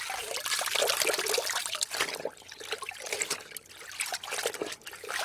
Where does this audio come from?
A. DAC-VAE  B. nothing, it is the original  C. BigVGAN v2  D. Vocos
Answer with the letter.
B